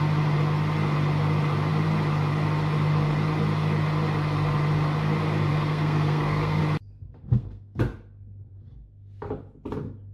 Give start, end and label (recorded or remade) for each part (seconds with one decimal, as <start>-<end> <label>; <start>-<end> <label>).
0.0-5.5 recorded; 5.5-6.6 remade; 6.6-7.2 recorded; 7.2-7.8 remade; 7.8-10.1 recorded